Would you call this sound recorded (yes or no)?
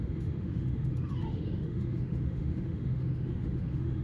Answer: no